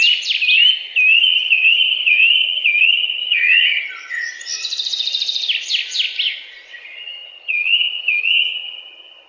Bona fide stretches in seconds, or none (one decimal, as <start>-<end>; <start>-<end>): 0.0-1.1; 3.8-6.7